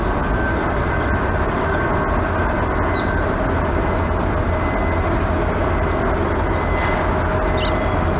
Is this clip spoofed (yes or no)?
no